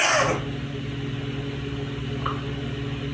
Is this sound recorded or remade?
recorded